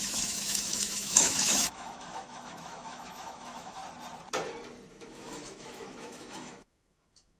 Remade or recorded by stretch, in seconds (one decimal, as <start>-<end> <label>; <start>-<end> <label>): 0.0-3.8 remade; 3.8-4.9 recorded; 4.9-7.4 remade